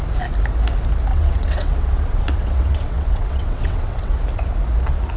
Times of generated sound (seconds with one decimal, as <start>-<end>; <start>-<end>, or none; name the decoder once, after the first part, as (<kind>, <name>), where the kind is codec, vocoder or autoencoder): 1.1-4.2 (vocoder, WaveNeXt)